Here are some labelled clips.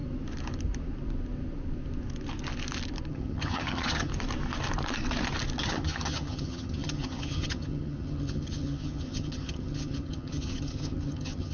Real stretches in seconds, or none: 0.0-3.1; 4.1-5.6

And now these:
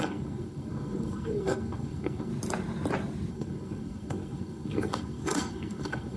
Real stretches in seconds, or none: 2.3-3.3

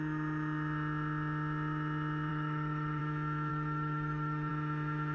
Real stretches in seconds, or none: 0.0-2.3; 3.0-3.5; 4.5-5.1

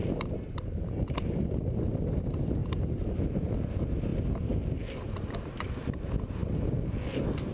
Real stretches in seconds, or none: 2.0-2.6; 3.2-7.5